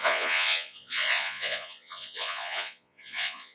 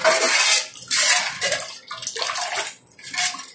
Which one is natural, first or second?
second